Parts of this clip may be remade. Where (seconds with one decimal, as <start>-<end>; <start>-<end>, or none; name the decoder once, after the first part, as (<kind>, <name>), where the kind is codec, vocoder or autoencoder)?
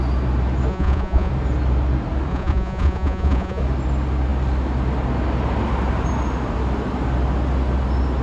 0.7-1.3 (vocoder, Vocos); 2.3-3.6